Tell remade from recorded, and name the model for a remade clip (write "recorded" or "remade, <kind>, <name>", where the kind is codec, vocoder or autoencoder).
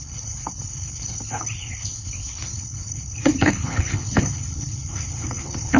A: remade, codec, HILCodec